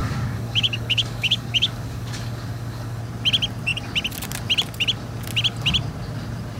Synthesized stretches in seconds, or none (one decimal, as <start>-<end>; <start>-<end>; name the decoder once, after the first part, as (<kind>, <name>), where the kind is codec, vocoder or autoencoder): 0.0-3.0 (codec, DAC)